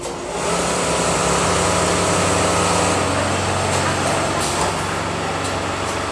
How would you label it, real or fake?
real